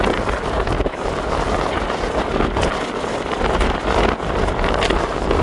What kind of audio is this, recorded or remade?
recorded